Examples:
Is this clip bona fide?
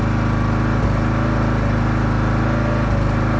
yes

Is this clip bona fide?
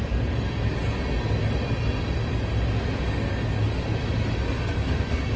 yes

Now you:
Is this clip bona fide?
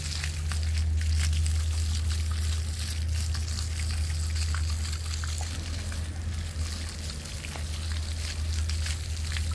yes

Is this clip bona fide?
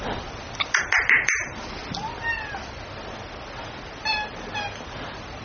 yes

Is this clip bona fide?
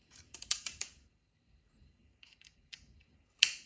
no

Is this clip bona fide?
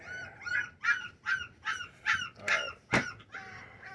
yes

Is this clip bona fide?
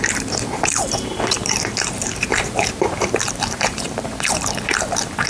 no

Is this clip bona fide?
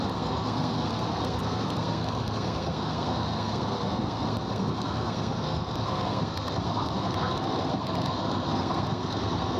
no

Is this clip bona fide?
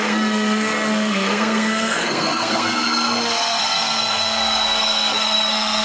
no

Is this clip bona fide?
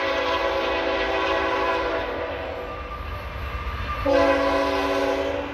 yes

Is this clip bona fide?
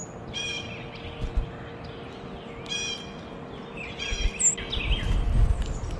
yes